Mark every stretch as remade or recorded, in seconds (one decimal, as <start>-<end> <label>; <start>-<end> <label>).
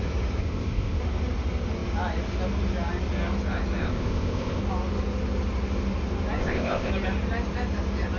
0.0-0.4 recorded; 0.4-1.0 remade; 1.0-3.8 recorded; 3.8-4.6 remade; 4.6-6.4 recorded; 6.4-6.9 remade; 6.9-8.2 recorded